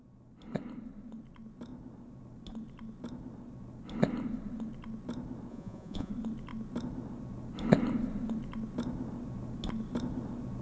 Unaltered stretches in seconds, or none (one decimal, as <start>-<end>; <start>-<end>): 0.0-5.5; 6.1-10.6